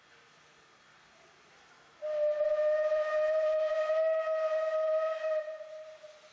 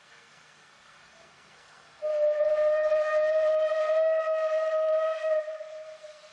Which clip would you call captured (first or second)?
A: first